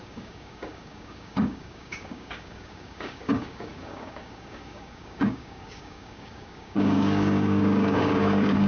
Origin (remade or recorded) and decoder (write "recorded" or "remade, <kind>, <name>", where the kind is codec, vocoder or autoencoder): remade, codec, DAC